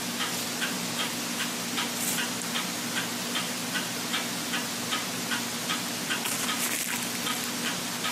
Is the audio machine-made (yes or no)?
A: no